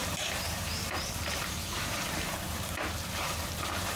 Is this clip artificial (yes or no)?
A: yes